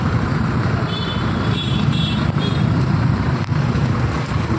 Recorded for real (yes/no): no